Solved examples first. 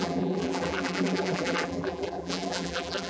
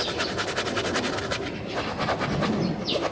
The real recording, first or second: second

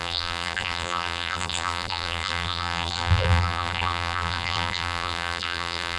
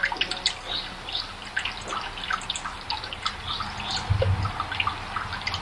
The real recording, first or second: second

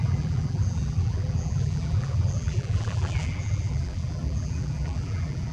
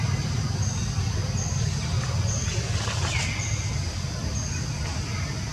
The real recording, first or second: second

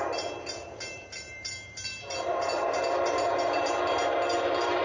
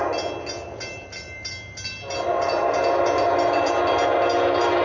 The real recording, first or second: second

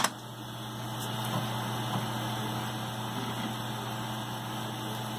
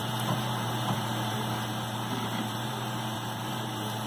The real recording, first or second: first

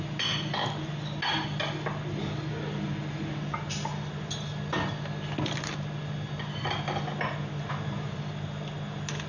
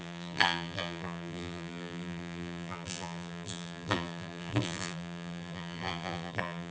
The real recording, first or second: first